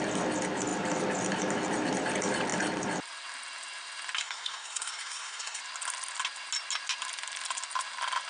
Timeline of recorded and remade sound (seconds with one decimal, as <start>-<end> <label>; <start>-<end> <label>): 0.0-4.2 recorded; 4.2-5.6 remade; 5.6-8.3 recorded